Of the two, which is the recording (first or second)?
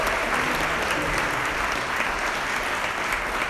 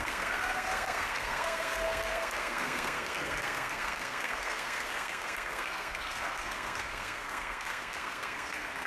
first